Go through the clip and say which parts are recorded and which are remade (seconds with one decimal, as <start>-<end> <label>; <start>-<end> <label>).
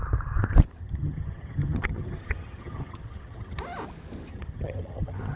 0.0-0.8 recorded; 0.8-3.6 remade; 3.6-4.3 recorded; 4.3-5.4 remade